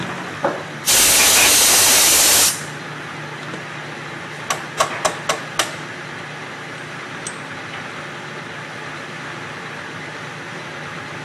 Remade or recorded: recorded